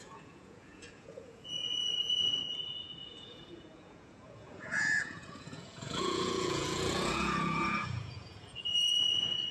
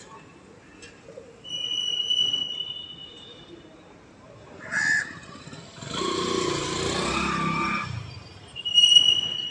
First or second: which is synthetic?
first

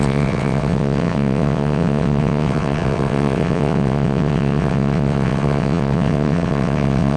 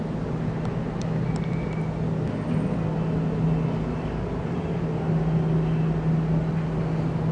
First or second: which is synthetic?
first